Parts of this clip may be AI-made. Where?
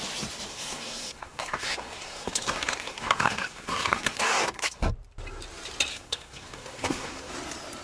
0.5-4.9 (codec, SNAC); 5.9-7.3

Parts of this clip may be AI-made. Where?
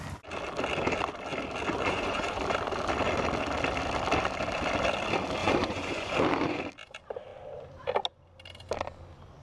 1.7-2.4 (vocoder, Vocos); 5.4-6.6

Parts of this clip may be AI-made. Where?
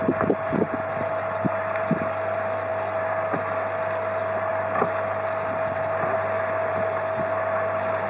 none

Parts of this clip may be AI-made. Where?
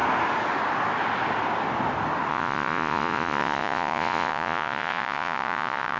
2.3-6.0 (vocoder, Vocos)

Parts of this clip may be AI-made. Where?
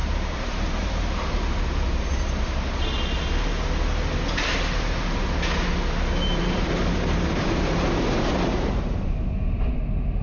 0.0-2.5 (vocoder, BigVGAN v2); 6.3-9.1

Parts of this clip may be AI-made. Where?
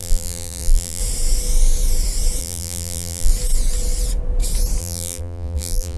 0.0-1.0 (vocoder, BigVGAN v2); 2.4-3.3; 4.8-6.0